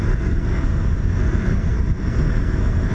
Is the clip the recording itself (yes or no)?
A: no